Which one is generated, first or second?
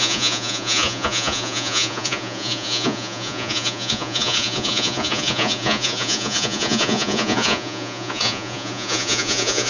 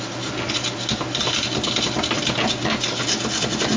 first